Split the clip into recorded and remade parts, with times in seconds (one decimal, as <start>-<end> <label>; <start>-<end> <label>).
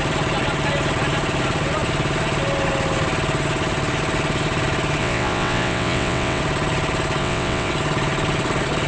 0.0-5.0 recorded; 5.0-6.4 remade; 6.4-7.2 recorded; 7.2-7.7 remade; 7.7-8.9 recorded